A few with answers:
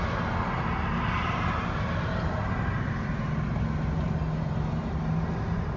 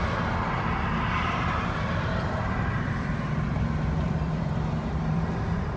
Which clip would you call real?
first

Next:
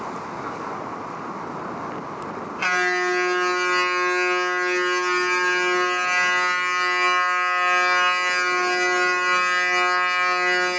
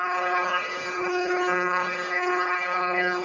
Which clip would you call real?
first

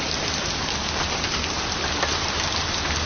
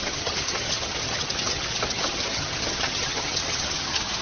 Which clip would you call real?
first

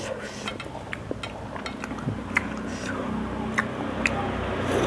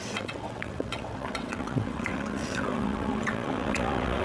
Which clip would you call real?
first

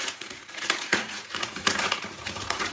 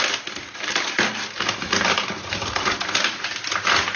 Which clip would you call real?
second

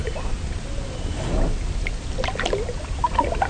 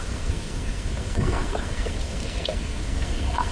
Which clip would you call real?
first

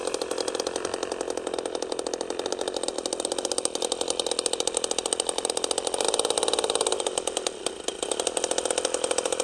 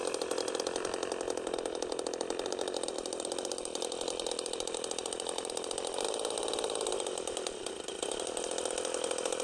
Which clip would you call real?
first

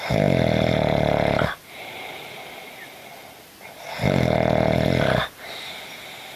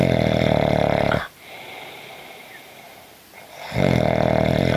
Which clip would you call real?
first